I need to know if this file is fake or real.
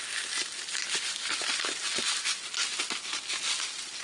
real